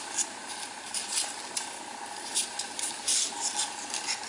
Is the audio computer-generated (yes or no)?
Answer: no